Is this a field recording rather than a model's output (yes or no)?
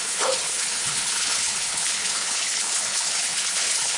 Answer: no